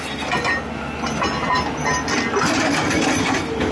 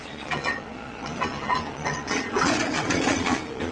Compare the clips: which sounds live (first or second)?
first